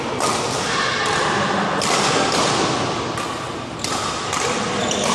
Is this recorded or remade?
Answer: recorded